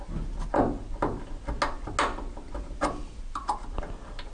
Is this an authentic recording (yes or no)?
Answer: yes